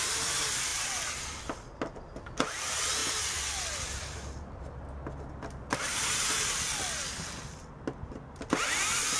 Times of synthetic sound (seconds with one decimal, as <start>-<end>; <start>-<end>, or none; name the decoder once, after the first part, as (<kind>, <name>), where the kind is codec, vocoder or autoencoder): none